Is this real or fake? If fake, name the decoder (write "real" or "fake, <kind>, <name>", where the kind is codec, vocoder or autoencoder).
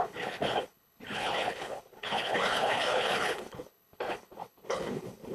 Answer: fake, codec, HILCodec